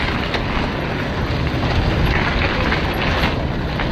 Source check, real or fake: real